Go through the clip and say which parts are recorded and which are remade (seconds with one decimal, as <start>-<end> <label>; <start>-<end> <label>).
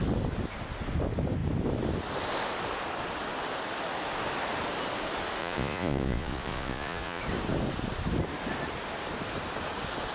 0.0-5.4 recorded; 5.4-7.2 remade; 7.2-10.1 recorded